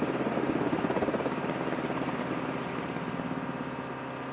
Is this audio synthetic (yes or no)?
no